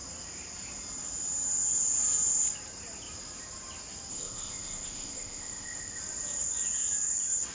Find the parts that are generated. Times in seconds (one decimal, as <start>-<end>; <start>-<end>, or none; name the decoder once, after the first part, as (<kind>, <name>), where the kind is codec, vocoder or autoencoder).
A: 4.1-6.0 (codec, ZipCodec)